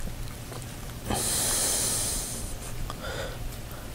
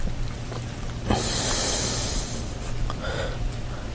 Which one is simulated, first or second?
first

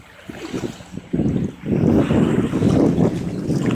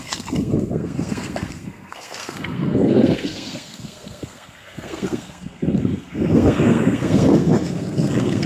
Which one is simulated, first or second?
second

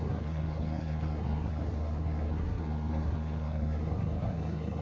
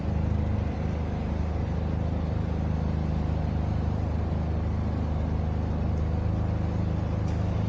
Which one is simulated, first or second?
first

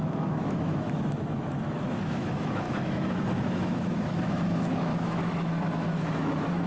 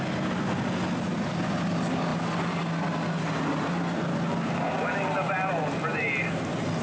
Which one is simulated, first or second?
first